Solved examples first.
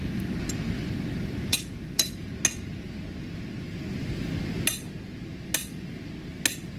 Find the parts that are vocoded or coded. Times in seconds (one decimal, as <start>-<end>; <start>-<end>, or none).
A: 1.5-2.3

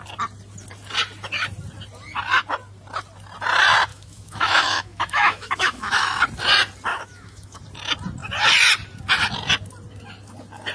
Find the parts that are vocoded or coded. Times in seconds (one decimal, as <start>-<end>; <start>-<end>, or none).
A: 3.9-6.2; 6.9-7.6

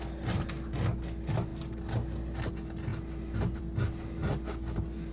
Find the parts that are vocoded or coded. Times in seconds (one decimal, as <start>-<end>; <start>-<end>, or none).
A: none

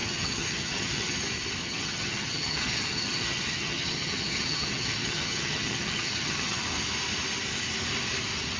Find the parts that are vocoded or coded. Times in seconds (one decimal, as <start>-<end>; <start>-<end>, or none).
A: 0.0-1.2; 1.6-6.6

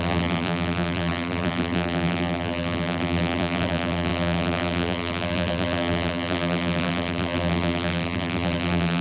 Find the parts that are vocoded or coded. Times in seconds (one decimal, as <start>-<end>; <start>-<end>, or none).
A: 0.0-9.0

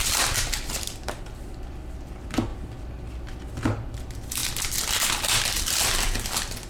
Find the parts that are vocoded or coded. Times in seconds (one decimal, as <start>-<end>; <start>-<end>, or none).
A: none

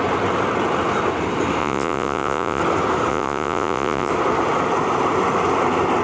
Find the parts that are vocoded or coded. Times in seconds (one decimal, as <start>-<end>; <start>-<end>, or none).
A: 1.6-2.6; 3.1-4.1

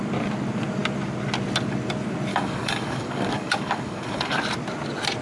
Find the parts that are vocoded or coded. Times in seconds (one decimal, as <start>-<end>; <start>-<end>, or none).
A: 2.3-4.4